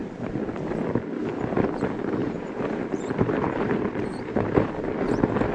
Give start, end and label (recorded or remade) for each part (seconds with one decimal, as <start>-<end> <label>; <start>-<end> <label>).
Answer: 0.0-2.2 recorded; 2.2-4.7 remade; 4.7-5.5 recorded